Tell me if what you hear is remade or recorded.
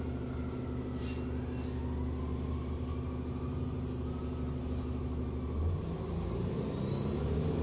recorded